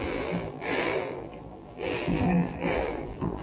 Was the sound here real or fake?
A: fake